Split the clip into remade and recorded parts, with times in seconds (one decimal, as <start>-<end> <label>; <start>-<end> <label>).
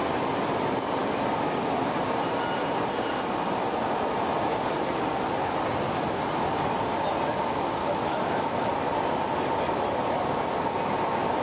0.0-7.8 recorded; 7.8-8.7 remade; 8.7-11.4 recorded